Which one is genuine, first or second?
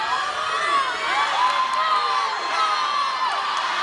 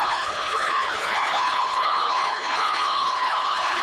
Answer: first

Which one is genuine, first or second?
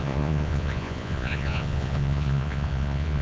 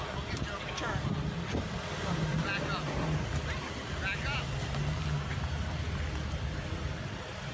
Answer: second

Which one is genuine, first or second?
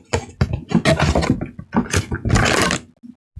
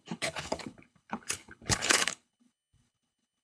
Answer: first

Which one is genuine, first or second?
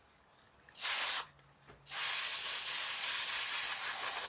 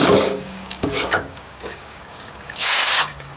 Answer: first